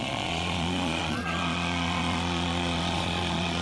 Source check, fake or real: fake